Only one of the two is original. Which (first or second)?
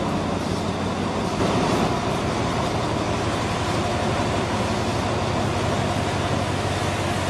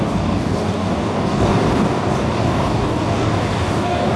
first